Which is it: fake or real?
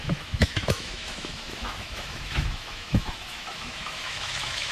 fake